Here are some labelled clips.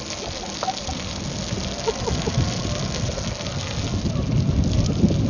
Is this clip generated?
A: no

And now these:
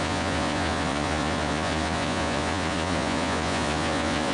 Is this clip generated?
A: yes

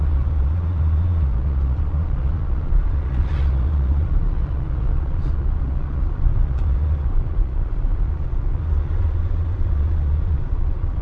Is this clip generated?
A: yes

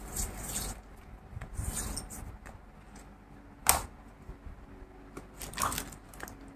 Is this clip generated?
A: no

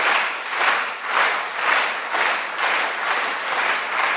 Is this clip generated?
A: no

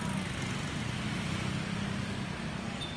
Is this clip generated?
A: no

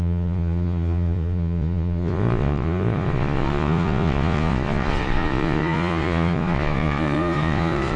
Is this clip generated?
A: yes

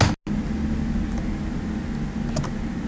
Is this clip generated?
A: no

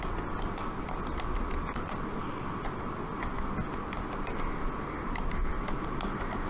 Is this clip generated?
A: no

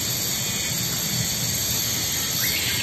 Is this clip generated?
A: no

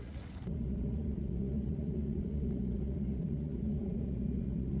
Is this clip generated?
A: yes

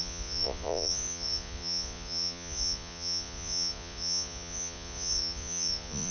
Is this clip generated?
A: yes